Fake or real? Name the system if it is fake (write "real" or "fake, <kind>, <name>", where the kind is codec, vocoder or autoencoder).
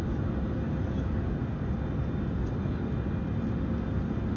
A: real